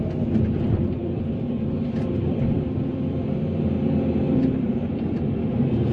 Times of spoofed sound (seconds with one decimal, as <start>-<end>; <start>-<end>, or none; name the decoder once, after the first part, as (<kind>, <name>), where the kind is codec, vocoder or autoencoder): 0.0-5.9 (vocoder, BigVGAN v2)